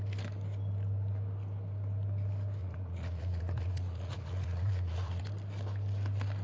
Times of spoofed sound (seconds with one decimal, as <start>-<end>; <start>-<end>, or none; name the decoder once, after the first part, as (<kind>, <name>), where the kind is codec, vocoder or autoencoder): 2.6-5.2 (vocoder, Vocos)